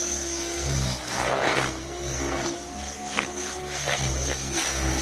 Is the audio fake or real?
fake